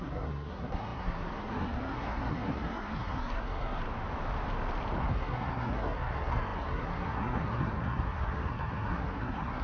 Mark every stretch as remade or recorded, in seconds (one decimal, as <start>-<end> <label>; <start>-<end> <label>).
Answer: 0.0-3.8 remade; 3.8-5.0 recorded; 5.0-9.6 remade

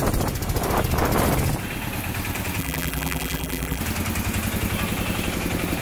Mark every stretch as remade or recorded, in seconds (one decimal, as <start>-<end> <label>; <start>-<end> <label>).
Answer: 0.0-2.6 recorded; 2.6-3.8 remade; 3.8-5.8 recorded

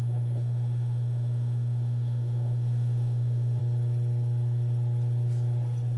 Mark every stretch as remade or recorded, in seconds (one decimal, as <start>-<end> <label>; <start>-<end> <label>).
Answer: 0.0-3.6 remade; 3.6-6.0 recorded

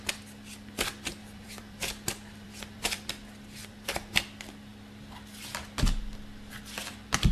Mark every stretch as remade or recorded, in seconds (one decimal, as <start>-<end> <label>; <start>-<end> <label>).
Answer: 0.0-1.2 recorded; 1.2-3.1 remade; 3.1-3.6 recorded; 3.6-4.2 remade; 4.2-7.3 recorded